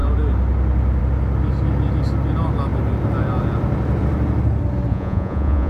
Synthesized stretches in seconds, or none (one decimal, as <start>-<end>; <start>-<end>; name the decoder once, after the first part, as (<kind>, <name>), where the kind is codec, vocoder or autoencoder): 4.9-5.7 (vocoder, Vocos)